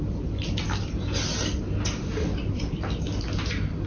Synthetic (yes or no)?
no